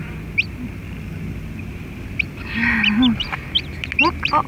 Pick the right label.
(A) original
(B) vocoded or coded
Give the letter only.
A